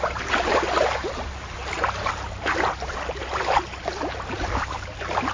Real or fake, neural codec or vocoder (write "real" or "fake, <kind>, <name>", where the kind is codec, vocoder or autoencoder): real